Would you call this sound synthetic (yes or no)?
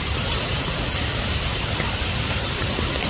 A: no